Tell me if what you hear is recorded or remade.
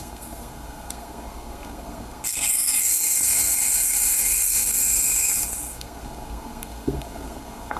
remade